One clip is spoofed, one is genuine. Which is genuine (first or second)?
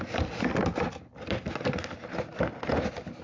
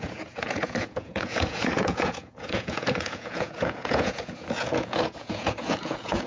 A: first